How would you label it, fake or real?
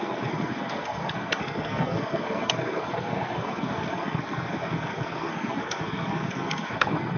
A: fake